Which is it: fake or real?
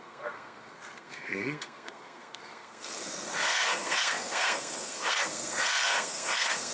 fake